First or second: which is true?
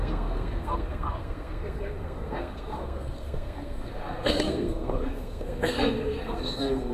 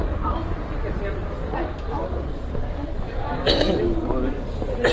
second